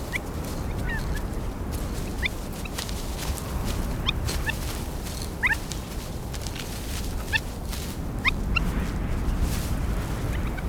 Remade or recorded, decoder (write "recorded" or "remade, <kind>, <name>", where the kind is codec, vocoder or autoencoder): recorded